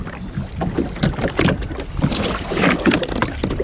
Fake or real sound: real